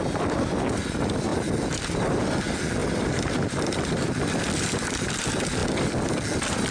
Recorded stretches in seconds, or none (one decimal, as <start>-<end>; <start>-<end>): 0.0-1.3; 2.1-2.8; 4.1-6.7